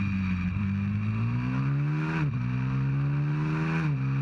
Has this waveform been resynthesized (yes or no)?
no